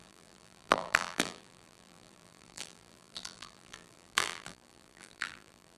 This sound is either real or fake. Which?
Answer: fake